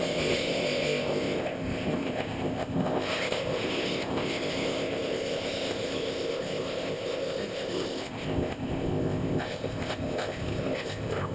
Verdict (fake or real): fake